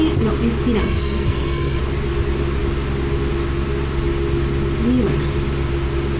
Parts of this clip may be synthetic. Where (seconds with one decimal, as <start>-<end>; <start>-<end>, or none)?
0.8-1.8